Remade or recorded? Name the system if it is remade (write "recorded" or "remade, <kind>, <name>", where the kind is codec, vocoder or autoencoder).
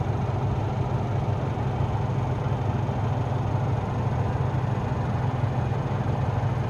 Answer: recorded